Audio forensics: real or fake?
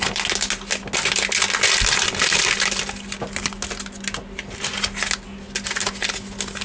real